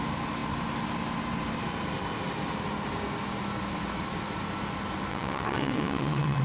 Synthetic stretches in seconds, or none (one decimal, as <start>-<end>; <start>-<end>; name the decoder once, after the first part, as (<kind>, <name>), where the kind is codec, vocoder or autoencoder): 5.1-6.4 (vocoder, WaveNeXt)